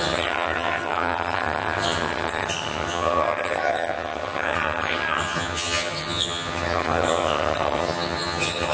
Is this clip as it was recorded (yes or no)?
no